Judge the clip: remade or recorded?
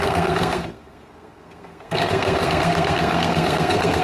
remade